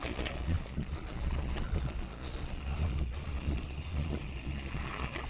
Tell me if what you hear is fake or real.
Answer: fake